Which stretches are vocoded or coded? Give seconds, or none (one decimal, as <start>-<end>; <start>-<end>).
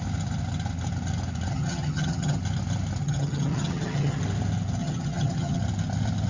1.5-2.4; 3.0-4.2; 4.8-5.6